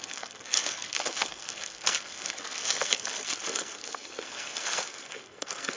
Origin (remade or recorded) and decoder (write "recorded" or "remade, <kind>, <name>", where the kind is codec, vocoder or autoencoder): remade, codec, SNAC